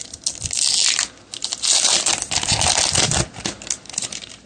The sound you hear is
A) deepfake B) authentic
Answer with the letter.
B